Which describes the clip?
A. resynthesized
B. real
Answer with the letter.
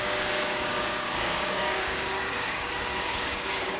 A